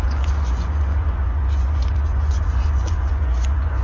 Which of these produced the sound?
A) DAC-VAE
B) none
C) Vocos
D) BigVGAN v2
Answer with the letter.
C